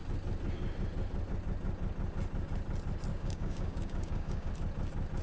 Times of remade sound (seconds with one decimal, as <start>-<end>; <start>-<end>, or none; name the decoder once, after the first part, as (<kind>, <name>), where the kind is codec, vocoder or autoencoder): 3.1-4.5 (codec, DAC)